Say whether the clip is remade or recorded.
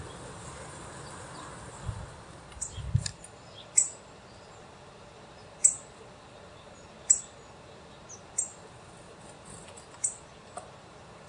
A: recorded